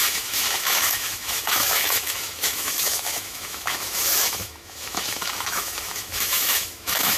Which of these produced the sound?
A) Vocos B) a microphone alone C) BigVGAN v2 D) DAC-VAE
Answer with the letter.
D